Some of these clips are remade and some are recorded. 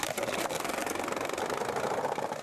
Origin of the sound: recorded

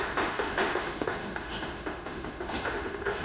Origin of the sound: remade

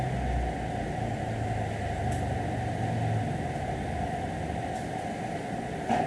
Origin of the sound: recorded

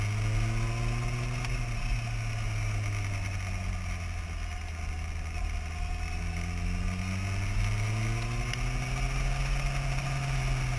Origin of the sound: recorded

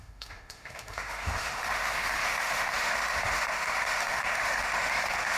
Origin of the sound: remade